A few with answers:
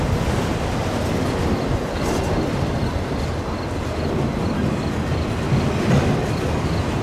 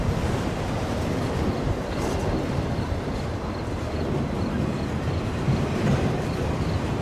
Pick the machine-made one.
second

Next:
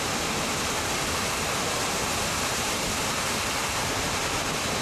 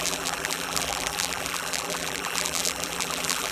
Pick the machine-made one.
second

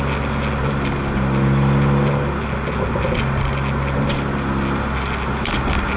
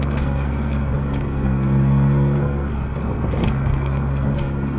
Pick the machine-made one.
second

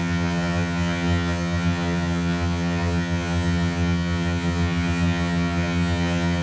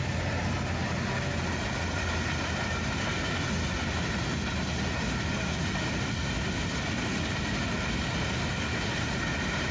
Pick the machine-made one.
first